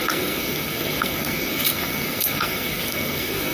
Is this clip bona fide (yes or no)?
no